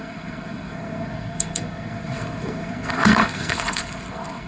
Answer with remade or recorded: remade